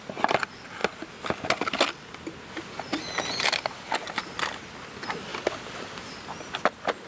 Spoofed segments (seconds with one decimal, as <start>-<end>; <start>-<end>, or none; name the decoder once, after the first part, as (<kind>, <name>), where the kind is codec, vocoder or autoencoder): none